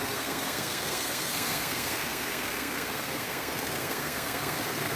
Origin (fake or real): fake